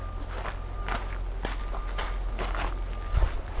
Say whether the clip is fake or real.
real